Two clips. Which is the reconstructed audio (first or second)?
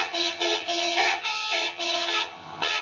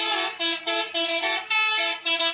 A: first